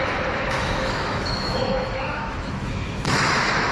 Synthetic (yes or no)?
yes